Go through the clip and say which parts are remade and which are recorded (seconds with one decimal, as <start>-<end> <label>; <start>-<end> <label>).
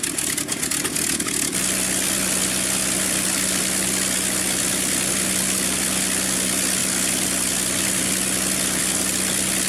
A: 0.0-9.7 recorded